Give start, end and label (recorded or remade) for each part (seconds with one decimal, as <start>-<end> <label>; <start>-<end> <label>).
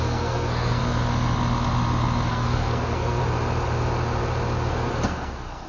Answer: 0.0-0.8 remade; 0.8-2.3 recorded; 2.3-3.2 remade; 3.2-4.7 recorded; 4.7-5.7 remade